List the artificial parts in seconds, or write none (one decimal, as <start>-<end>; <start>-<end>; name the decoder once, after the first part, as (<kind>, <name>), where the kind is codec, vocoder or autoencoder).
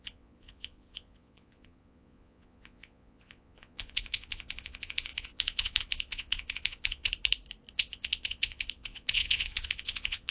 0.0-7.1 (vocoder, Vocos); 7.7-10.3